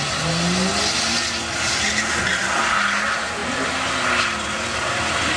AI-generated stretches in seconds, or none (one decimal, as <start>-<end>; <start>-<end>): none

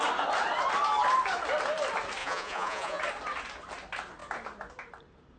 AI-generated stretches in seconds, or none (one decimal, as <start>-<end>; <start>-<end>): 2.2-3.0